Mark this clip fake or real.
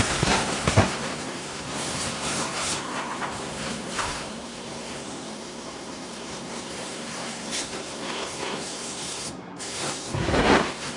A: fake